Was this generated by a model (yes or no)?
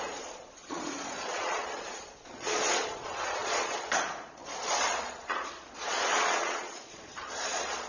yes